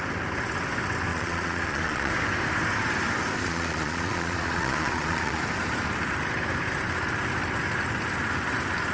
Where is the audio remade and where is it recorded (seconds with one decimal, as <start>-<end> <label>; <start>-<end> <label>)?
0.0-1.1 recorded; 1.1-2.1 remade; 2.1-3.4 recorded; 3.4-5.4 remade; 5.4-8.9 recorded